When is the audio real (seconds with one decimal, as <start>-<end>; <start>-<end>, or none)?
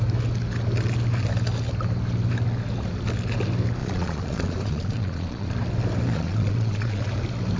0.0-3.8; 5.5-6.1; 7.0-7.6